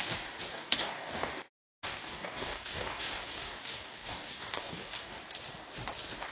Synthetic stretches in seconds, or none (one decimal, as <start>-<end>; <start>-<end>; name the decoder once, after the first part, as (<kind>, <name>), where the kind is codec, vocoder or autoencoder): 0.5-1.4 (codec, DAC); 1.9-5.2